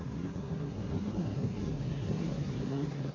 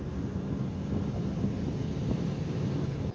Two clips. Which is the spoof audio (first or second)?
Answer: first